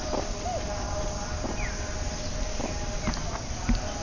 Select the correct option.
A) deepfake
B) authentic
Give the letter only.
B